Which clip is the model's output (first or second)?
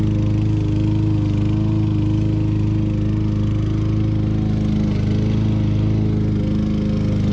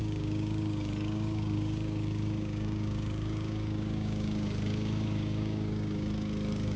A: second